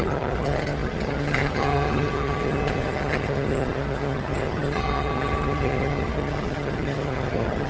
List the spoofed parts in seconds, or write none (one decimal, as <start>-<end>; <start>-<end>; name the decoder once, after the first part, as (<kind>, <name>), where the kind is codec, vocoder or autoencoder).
0.0-7.7 (vocoder, HiFi-GAN)

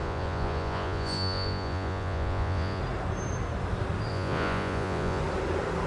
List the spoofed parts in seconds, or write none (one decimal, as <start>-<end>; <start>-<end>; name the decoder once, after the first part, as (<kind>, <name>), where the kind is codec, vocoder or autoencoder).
0.0-2.8 (vocoder, Vocos); 4.1-5.2

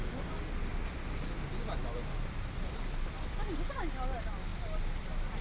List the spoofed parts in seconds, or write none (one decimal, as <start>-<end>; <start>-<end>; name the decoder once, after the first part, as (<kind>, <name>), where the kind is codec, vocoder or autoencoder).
none